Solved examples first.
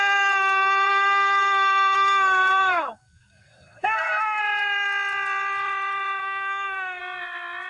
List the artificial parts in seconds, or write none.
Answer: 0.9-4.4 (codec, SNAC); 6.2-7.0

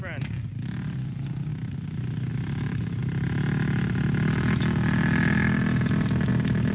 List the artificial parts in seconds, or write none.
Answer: none

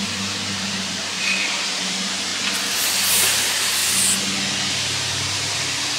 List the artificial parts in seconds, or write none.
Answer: 0.0-2.3 (vocoder, BigVGAN v2); 3.1-3.8; 4.7-6.0

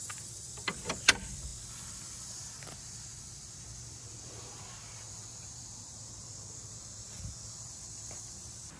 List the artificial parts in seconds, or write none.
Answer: none

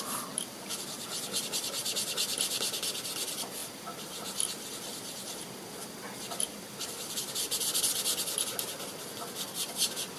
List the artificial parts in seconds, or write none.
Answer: none